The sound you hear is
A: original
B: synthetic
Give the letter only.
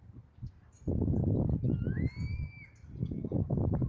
A